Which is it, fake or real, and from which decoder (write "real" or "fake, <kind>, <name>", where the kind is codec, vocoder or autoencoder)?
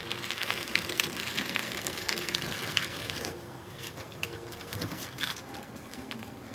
fake, codec, SNAC